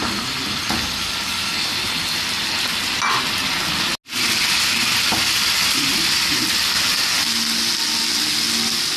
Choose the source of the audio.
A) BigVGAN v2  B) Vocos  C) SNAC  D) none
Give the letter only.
D